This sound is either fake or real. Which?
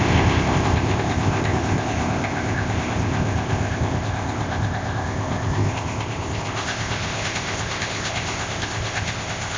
fake